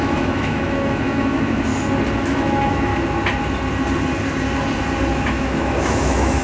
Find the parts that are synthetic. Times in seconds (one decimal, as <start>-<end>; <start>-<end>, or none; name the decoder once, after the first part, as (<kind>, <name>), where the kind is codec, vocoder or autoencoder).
0.0-1.7 (autoencoder, DAC-VAE); 2.2-2.9; 5.1-6.4